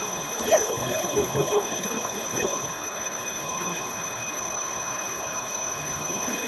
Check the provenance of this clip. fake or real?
fake